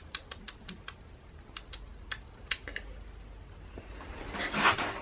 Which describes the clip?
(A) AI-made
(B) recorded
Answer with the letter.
B